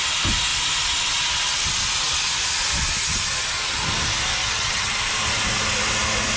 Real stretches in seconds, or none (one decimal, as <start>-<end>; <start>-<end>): 0.0-4.4; 4.9-6.4